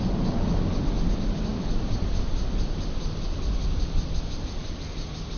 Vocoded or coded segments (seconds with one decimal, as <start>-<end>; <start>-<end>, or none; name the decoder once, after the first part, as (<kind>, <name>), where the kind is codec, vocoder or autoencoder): none